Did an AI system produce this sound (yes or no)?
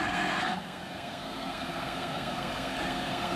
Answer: yes